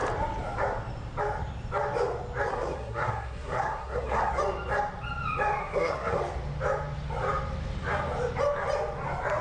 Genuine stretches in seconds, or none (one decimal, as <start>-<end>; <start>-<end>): 0.0-2.5; 4.3-5.6; 6.2-9.4